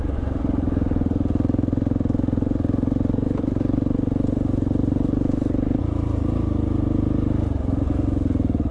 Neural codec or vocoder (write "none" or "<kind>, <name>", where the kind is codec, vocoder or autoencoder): none